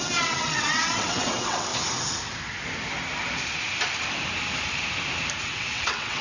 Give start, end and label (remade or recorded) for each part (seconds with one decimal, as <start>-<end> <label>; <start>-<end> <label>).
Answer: 0.0-1.7 remade; 1.7-5.4 recorded; 5.4-6.2 remade